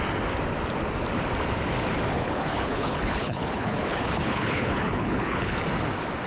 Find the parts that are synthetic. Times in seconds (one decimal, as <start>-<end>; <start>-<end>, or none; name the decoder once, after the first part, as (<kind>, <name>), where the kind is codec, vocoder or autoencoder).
2.1-5.5 (codec, HILCodec)